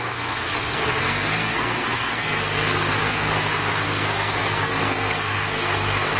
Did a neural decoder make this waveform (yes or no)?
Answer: yes